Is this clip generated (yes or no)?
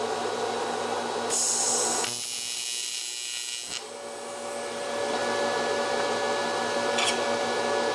no